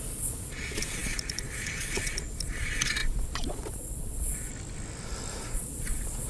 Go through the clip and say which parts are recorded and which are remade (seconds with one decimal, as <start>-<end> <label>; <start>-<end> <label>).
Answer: 0.0-4.5 remade; 4.5-5.3 recorded; 5.3-6.3 remade